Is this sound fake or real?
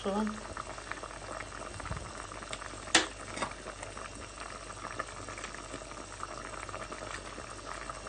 real